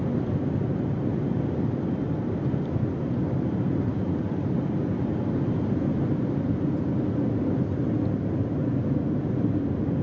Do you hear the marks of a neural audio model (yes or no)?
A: no